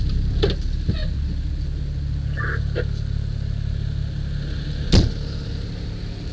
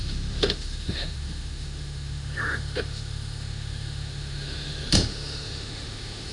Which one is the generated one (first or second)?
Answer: second